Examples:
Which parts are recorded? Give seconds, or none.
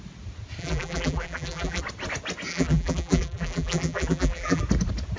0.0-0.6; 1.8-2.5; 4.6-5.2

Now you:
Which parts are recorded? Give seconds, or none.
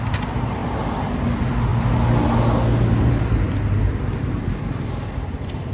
0.6-1.2; 1.7-3.1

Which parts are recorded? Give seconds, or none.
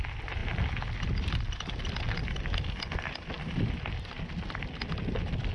0.0-5.5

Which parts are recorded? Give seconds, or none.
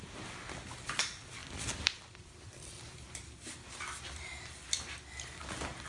0.0-1.4; 4.9-5.9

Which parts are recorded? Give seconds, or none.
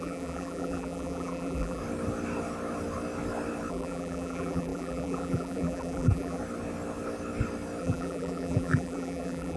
1.8-3.7; 6.4-7.8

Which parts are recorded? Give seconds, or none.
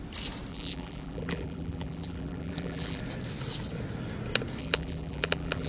0.0-0.5; 3.0-4.6